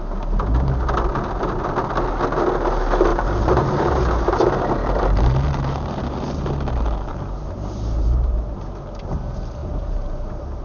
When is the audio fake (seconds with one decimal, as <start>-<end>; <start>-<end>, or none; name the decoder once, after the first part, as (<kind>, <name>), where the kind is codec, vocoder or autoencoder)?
3.1-6.5 (vocoder, BigVGAN v2); 7.1-8.6; 9.6-10.6